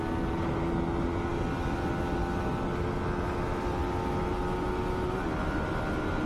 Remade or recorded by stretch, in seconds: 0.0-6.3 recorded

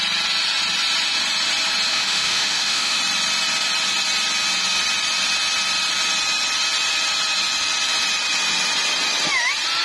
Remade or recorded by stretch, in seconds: 0.0-1.9 recorded; 1.9-3.0 remade; 3.0-9.8 recorded

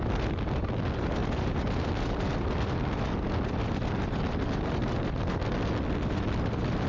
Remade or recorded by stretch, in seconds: 0.0-6.9 recorded

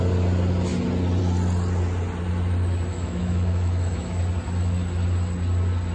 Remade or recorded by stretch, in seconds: 0.0-2.9 recorded; 2.9-4.2 remade; 4.2-5.9 recorded

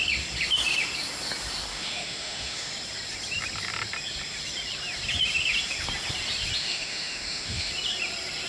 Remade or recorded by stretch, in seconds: 0.0-1.7 recorded; 1.7-2.7 remade; 2.7-6.6 recorded; 6.6-7.7 remade; 7.7-8.5 recorded

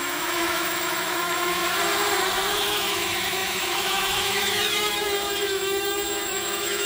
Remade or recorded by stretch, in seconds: 0.0-1.6 remade; 1.6-2.5 recorded; 2.5-6.9 remade

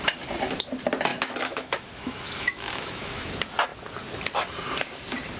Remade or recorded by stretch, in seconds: 0.0-1.1 recorded; 1.1-3.3 remade; 3.3-5.4 recorded

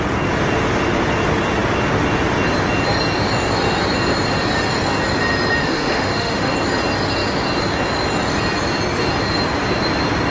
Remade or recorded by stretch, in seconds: 0.0-5.6 recorded; 5.6-6.5 remade; 6.5-10.3 recorded